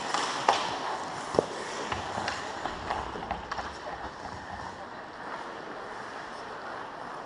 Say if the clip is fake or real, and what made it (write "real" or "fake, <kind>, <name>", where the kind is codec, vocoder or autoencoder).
real